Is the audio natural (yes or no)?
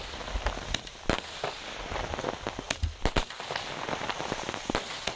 yes